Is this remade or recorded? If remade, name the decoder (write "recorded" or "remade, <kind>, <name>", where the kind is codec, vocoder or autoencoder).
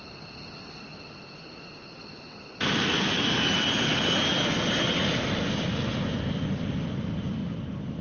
recorded